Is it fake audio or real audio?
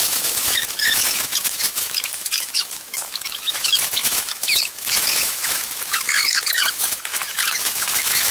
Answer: fake